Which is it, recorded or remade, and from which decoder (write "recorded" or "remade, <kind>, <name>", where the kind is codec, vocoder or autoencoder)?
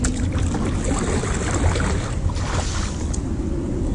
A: remade, vocoder, BigVGAN v2